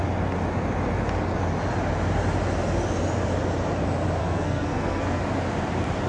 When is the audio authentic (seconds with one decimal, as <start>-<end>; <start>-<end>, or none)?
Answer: 0.0-4.2; 5.2-6.1